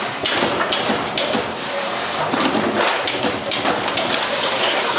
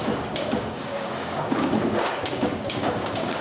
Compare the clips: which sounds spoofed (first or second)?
second